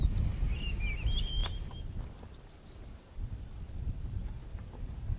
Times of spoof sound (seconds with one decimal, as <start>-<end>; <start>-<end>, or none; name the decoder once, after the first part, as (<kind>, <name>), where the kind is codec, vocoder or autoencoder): none